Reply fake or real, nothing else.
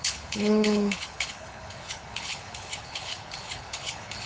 fake